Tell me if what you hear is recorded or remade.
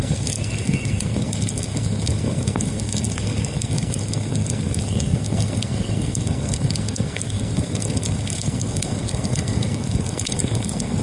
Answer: remade